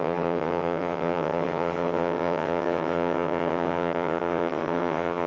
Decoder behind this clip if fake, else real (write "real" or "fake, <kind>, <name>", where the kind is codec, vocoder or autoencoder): fake, vocoder, HiFi-GAN